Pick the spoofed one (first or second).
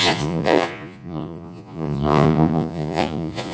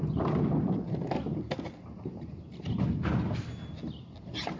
first